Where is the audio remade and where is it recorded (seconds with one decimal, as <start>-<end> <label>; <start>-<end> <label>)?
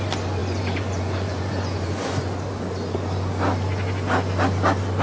0.0-0.4 recorded; 0.4-2.4 remade; 2.4-5.0 recorded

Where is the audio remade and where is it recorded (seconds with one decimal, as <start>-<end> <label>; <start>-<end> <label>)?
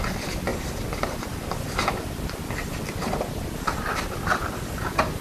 0.0-5.2 recorded